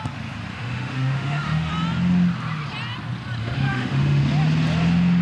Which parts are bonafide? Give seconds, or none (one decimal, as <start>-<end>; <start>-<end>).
0.0-0.5; 1.7-3.4; 4.2-5.2